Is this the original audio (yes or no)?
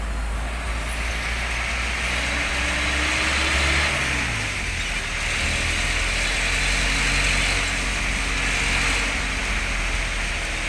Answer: yes